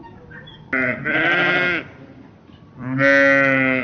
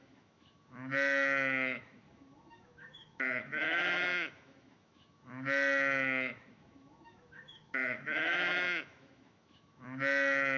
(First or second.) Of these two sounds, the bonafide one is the first